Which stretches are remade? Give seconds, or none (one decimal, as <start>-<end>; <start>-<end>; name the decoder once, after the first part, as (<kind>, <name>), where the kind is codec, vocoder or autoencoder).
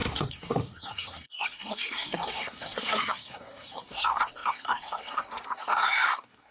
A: 0.0-6.5 (codec, SNAC)